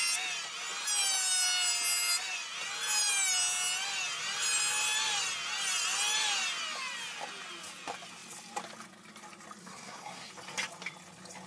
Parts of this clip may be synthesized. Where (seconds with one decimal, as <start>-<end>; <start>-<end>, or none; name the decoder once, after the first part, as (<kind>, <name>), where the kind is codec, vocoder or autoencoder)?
9.6-10.3 (codec, SNAC)